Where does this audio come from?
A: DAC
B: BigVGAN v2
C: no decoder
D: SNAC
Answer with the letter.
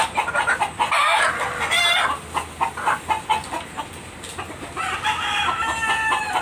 C